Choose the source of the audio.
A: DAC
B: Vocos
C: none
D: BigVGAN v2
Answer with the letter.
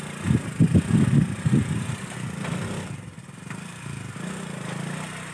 C